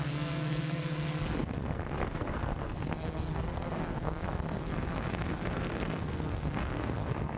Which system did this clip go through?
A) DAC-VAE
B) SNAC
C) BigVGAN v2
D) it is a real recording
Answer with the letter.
B